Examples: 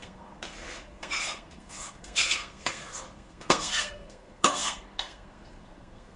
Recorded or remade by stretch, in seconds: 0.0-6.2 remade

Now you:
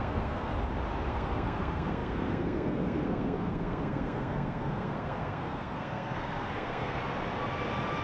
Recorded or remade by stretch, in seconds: 0.0-0.5 remade; 0.5-1.1 recorded; 1.1-7.0 remade; 7.0-8.0 recorded

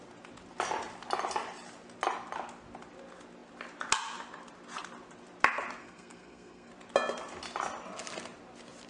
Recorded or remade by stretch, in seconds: 0.0-5.8 recorded; 5.8-6.7 remade; 6.7-8.9 recorded

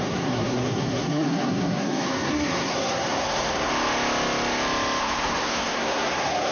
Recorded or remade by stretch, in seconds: 0.0-3.7 remade; 3.7-5.0 recorded; 5.0-6.5 remade